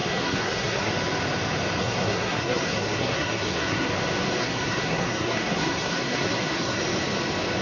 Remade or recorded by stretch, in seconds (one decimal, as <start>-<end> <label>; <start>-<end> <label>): 0.0-0.9 remade; 0.9-1.8 recorded; 1.8-3.9 remade; 3.9-4.4 recorded; 4.4-6.8 remade; 6.8-7.6 recorded